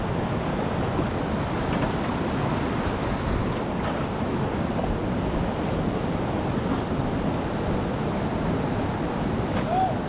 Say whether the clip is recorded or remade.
recorded